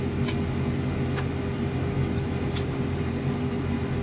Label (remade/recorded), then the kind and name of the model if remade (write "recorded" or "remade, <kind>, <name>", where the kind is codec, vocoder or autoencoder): recorded